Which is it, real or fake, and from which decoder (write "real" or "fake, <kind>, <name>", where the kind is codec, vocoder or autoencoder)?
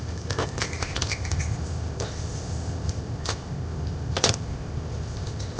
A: fake, codec, ZipCodec